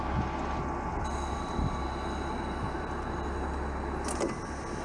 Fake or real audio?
real